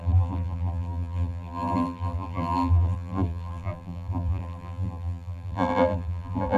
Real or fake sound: fake